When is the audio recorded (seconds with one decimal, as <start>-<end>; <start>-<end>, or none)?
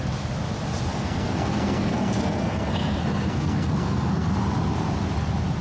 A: 0.0-0.9; 4.3-5.6